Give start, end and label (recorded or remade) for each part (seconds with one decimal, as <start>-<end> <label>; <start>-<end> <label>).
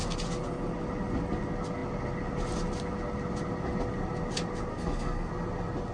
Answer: 0.0-4.7 recorded; 4.7-5.3 remade; 5.3-5.9 recorded